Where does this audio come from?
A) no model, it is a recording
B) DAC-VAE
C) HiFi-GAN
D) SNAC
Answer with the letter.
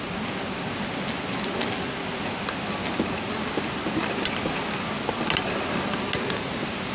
A